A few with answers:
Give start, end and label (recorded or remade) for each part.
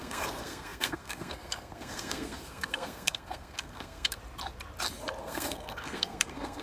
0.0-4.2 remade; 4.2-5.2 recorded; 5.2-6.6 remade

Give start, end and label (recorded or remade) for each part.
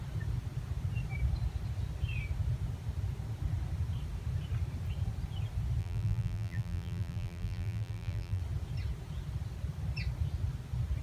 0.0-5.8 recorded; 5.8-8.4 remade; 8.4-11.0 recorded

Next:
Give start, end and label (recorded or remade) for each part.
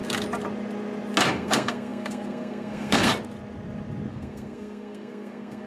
0.0-1.3 recorded; 1.3-3.1 remade; 3.1-4.1 recorded; 4.1-5.7 remade